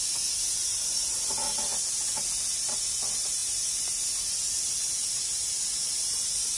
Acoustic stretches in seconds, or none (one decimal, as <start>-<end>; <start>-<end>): 0.0-6.6